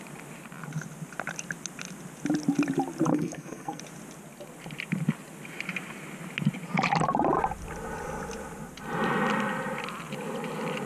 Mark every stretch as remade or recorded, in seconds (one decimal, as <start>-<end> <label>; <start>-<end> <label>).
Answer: 0.0-3.1 recorded; 3.1-3.8 remade; 3.8-10.9 recorded

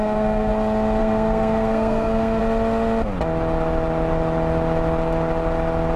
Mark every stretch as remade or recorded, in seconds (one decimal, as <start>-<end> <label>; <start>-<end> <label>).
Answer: 0.0-0.5 remade; 0.5-1.0 recorded; 1.0-2.4 remade; 2.4-6.0 recorded

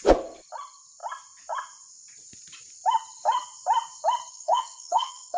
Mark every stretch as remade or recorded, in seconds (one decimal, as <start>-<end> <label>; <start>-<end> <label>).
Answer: 0.0-4.3 recorded; 4.3-5.4 remade

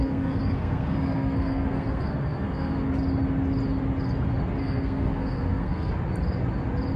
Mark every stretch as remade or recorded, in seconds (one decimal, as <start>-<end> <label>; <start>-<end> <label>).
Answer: 0.0-2.9 remade; 2.9-4.6 recorded; 4.6-5.9 remade; 5.9-7.0 recorded

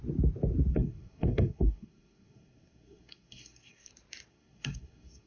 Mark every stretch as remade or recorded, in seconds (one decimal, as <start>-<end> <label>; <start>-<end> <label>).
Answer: 0.0-0.7 recorded; 0.7-3.9 remade; 3.9-4.3 recorded; 4.3-5.3 remade